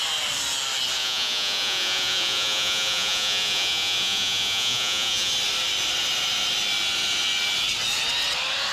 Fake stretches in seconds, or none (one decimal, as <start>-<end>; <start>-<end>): 1.0-5.3